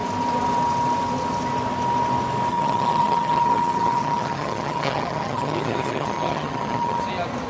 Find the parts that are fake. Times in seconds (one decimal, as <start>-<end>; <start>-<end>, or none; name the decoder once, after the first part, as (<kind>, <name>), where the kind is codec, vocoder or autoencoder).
2.5-7.0 (vocoder, HiFi-GAN)